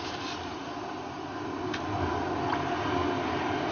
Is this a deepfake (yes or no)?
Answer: no